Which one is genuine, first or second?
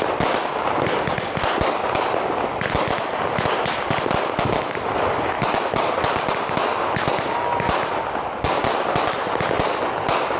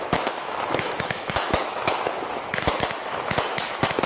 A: first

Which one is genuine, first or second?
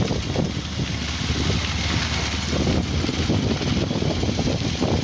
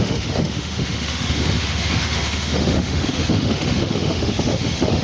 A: first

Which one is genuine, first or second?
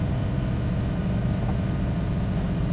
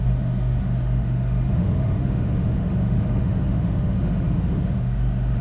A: first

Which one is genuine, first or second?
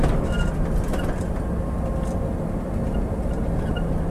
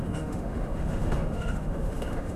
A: first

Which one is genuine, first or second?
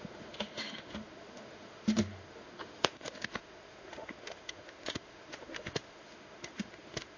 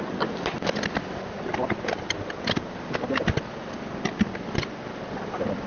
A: second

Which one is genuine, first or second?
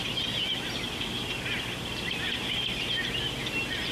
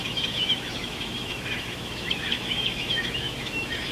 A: first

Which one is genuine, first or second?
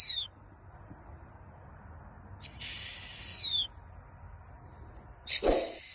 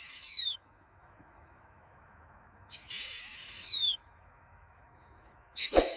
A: first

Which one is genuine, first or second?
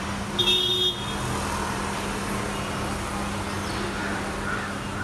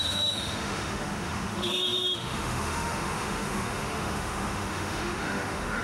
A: first